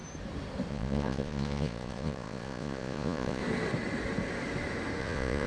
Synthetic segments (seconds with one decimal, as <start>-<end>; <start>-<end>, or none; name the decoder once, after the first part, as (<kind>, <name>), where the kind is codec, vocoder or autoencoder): 0.7-3.4 (vocoder, Vocos); 5.0-5.5